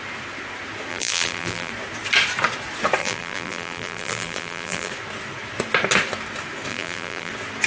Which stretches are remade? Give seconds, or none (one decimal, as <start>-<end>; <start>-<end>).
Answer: 0.9-1.7; 3.0-4.9; 6.7-7.3